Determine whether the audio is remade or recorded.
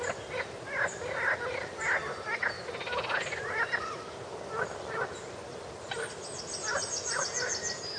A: recorded